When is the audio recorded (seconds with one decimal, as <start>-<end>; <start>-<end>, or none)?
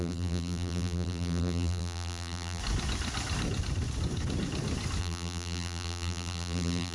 2.6-5.0